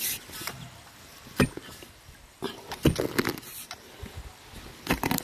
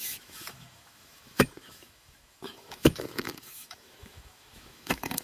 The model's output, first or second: second